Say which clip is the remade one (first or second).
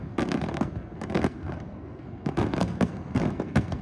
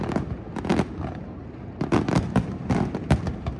first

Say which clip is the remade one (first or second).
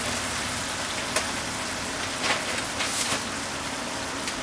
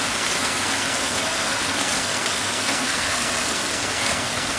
second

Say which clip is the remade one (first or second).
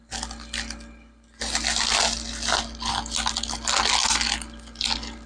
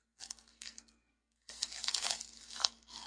second